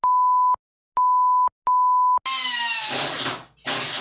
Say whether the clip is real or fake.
real